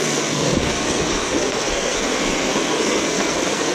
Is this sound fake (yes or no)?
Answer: yes